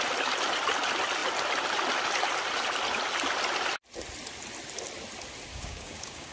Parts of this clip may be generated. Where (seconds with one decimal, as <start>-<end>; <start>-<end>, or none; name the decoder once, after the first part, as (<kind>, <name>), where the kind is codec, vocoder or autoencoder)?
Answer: 5.5-6.3 (codec, DAC)